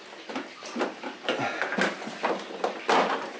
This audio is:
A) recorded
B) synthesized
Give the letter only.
A